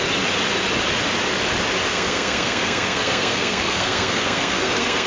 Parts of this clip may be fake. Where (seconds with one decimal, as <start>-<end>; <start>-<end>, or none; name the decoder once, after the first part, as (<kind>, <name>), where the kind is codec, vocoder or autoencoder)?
1.9-5.1 (codec, SNAC)